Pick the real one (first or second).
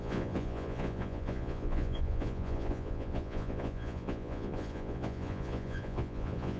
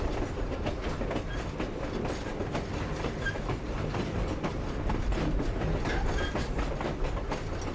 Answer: second